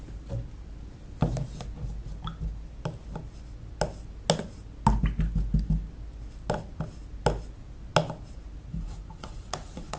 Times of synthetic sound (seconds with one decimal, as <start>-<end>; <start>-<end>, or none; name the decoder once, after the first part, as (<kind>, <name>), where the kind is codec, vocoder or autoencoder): 8.7-10.0 (vocoder, Vocos)